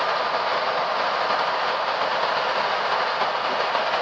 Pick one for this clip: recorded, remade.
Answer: recorded